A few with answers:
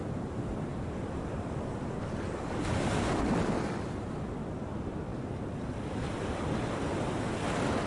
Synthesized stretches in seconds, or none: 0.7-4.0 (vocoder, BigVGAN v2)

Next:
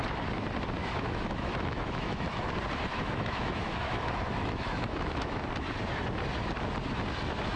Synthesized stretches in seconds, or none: 0.8-2.5 (autoencoder, DAC-VAE); 2.9-5.4

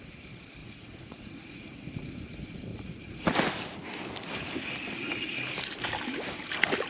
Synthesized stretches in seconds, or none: 0.6-1.8 (vocoder, Vocos); 2.7-3.2